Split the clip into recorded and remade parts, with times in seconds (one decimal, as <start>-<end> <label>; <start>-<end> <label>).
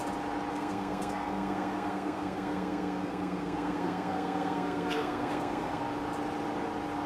0.0-0.5 recorded; 0.5-5.8 remade; 5.8-7.1 recorded